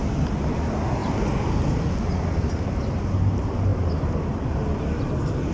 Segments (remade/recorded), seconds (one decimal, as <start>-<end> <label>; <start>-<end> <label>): 0.0-5.5 recorded